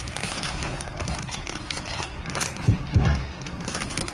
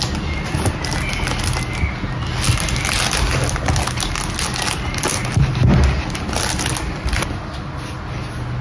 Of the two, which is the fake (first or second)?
first